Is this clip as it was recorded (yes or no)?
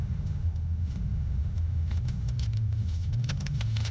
no